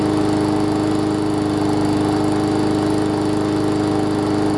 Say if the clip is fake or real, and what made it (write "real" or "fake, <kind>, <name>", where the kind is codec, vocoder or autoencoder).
real